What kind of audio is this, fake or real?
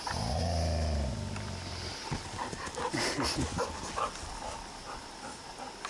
real